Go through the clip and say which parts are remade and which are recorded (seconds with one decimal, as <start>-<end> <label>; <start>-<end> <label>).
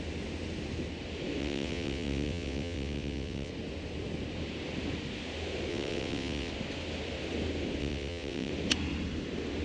0.0-1.4 recorded; 1.4-3.5 remade; 3.5-5.7 recorded; 5.7-6.5 remade; 6.5-7.8 recorded; 7.8-8.5 remade; 8.5-9.6 recorded